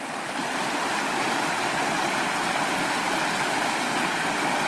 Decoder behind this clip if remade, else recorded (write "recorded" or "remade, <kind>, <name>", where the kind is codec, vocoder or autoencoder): recorded